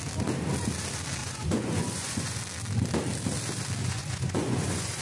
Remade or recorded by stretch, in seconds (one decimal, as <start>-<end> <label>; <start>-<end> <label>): 0.0-1.2 recorded; 1.2-2.4 remade; 2.4-3.8 recorded; 3.8-5.0 remade